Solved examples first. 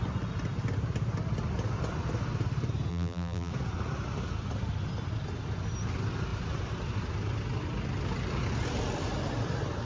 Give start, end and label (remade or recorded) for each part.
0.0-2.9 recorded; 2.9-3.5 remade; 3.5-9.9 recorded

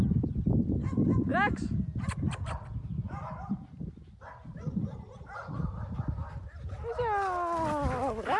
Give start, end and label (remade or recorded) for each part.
0.0-4.8 recorded; 4.8-5.7 remade; 5.7-8.4 recorded

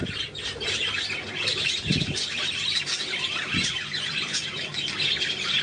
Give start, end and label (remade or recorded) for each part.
0.0-1.5 recorded; 1.5-4.8 remade; 4.8-5.6 recorded

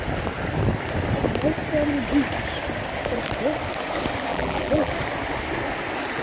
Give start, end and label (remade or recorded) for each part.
0.0-4.3 recorded; 4.3-4.9 remade; 4.9-6.2 recorded